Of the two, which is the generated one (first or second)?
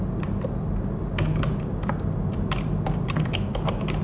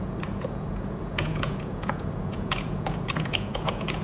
second